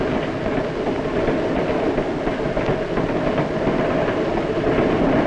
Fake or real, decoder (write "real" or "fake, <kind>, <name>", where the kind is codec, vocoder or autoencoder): real